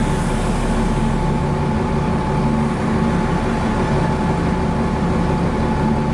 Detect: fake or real real